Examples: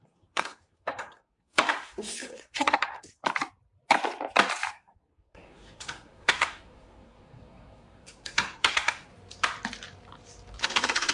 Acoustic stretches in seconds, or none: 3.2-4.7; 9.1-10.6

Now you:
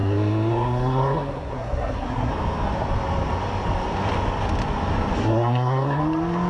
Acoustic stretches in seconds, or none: 2.3-5.2; 6.0-6.5

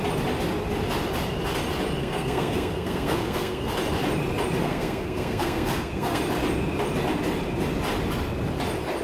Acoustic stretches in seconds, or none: 0.0-2.0; 3.7-4.6; 6.2-9.0

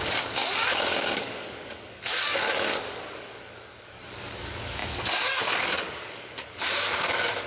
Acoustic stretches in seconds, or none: none

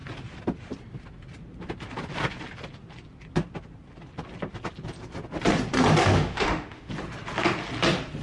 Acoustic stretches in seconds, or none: 0.0-6.0; 6.9-8.2

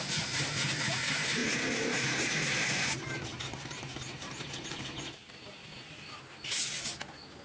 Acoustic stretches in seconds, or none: 0.0-7.4